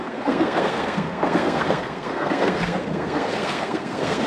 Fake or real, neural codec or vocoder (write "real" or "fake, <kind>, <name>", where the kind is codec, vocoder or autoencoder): fake, codec, SNAC